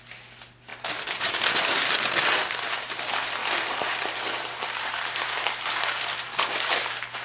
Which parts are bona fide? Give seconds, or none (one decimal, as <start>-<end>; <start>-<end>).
0.0-0.7; 1.3-3.4; 6.0-7.2